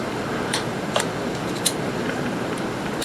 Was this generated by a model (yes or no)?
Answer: yes